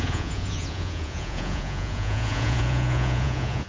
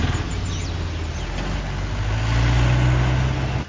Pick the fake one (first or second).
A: first